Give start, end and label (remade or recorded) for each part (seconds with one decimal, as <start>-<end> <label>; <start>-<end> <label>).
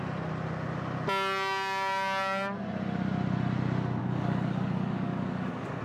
0.0-4.0 recorded; 4.0-5.8 remade